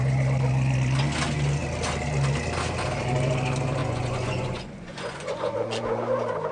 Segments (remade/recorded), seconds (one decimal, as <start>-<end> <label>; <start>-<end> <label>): 0.0-3.8 recorded; 3.8-5.8 remade; 5.8-6.5 recorded